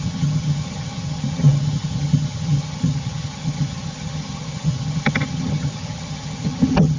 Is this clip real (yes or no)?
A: no